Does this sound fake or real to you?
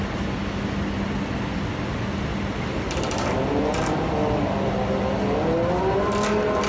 real